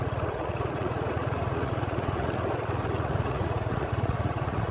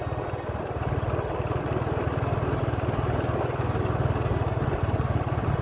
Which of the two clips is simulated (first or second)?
first